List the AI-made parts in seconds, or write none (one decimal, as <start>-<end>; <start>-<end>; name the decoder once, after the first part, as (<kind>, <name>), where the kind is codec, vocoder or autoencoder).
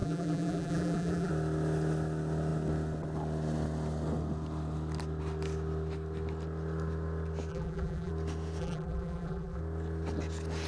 0.0-1.3 (vocoder, BigVGAN v2); 7.5-8.1; 8.6-9.6